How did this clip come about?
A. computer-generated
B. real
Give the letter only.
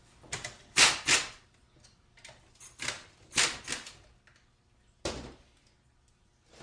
B